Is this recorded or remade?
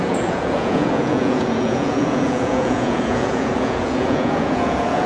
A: remade